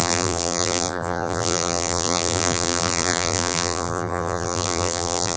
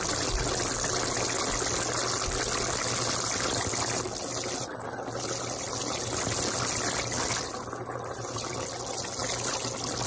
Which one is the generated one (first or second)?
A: first